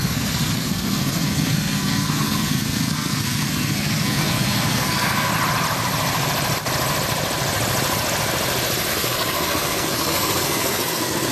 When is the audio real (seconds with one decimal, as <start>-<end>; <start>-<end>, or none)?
5.3-8.9